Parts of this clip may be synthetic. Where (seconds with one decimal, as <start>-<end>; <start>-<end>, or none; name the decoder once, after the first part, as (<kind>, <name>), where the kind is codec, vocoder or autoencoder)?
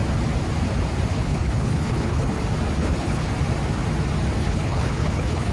1.1-2.4 (codec, HILCodec); 2.8-3.3; 4.4-5.5